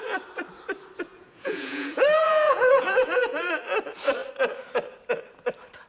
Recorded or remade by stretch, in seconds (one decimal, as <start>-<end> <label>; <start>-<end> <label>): 0.0-1.1 recorded; 1.1-3.5 remade; 3.5-5.9 recorded